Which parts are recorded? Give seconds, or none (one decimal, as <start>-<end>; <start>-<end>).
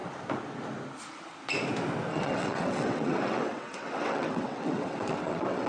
0.0-2.1